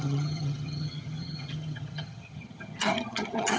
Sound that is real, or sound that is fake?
fake